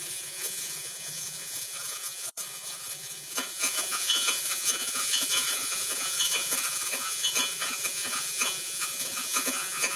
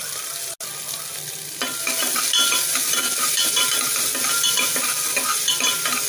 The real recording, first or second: second